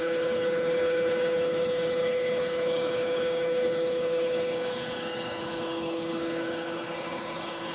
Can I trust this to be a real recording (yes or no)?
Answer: no